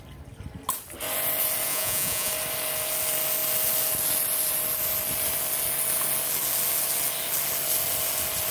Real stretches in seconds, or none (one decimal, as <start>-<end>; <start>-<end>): 0.0-1.7; 2.3-8.5